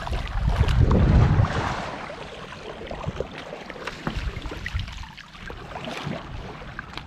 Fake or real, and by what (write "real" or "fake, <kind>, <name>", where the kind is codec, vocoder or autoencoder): real